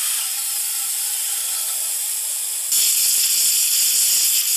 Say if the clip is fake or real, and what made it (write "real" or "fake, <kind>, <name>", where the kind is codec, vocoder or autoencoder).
real